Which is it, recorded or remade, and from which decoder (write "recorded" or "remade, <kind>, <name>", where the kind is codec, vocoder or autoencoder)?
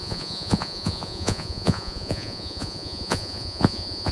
remade, vocoder, Vocos